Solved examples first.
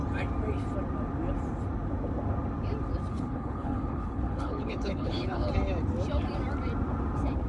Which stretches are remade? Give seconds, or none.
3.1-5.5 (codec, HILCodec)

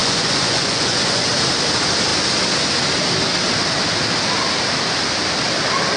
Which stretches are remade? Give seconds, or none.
0.0-1.3 (vocoder, Vocos)

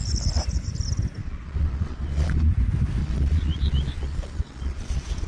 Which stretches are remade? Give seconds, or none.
1.2-2.5 (vocoder, Vocos); 3.0-5.3

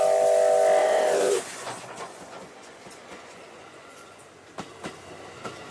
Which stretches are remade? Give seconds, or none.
0.8-4.2 (vocoder, Vocos)

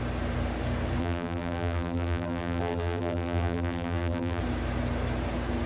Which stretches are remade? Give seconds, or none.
1.0-4.4 (vocoder, BigVGAN v2)

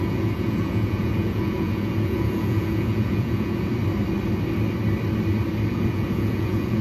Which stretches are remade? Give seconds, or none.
0.0-3.7 (vocoder, Vocos); 5.7-6.8